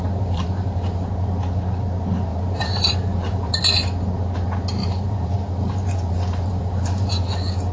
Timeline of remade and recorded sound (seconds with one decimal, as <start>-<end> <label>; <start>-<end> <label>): 0.0-1.1 remade; 1.1-2.3 recorded; 2.3-3.6 remade; 3.6-4.8 recorded; 4.8-6.1 remade; 6.1-6.5 recorded; 6.5-7.1 remade; 7.1-7.7 recorded